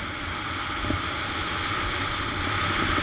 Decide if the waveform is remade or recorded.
recorded